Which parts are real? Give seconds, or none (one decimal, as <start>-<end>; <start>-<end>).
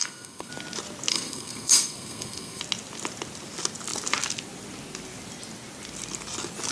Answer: 0.5-1.1; 2.6-6.7